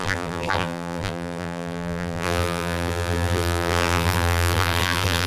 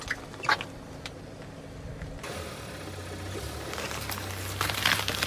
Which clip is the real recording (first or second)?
second